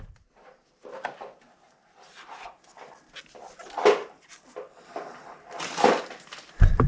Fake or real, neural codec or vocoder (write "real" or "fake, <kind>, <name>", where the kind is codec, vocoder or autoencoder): real